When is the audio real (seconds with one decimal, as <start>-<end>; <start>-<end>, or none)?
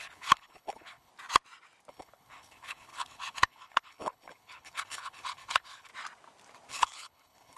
1.1-1.9; 5.9-6.7